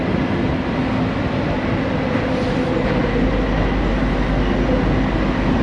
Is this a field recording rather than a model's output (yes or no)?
yes